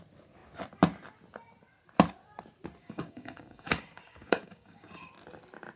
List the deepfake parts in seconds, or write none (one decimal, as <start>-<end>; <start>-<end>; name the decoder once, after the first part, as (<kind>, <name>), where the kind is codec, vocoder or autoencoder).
2.8-5.1 (codec, DAC)